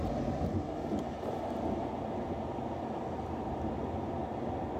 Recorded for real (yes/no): yes